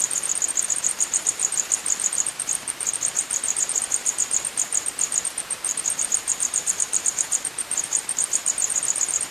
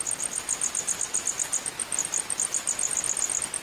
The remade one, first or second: first